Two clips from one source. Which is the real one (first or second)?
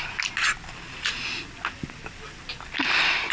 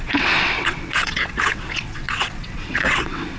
first